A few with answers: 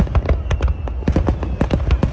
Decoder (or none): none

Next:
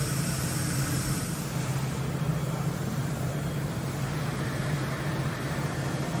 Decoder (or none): vocoder, BigVGAN v2